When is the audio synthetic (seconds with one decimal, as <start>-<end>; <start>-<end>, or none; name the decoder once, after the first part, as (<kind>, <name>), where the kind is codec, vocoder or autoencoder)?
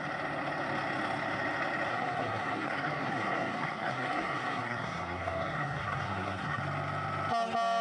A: 1.9-6.6 (codec, SNAC)